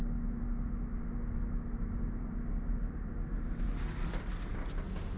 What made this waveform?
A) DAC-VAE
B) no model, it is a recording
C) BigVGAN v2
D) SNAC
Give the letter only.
B